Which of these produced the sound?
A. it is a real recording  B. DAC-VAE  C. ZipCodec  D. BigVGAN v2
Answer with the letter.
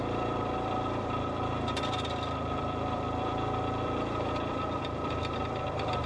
D